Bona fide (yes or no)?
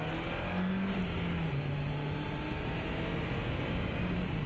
yes